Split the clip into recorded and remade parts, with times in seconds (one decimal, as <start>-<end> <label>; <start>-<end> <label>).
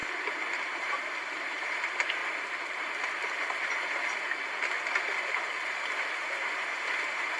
0.0-0.8 recorded; 0.8-2.2 remade; 2.2-6.1 recorded; 6.1-7.4 remade